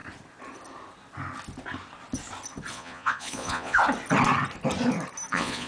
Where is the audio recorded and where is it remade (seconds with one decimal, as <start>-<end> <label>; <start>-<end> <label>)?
0.0-2.7 recorded; 2.7-3.8 remade; 3.8-5.3 recorded; 5.3-5.7 remade